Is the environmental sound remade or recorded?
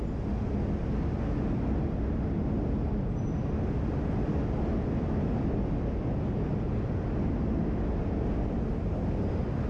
recorded